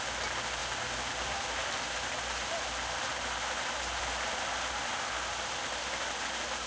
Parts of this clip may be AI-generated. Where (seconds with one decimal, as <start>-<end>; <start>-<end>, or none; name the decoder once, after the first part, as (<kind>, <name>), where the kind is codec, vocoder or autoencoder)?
0.6-4.0 (vocoder, BigVGAN v2); 4.9-6.0